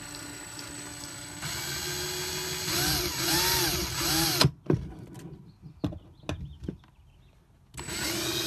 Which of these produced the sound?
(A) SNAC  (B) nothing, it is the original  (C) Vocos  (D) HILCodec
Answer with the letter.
B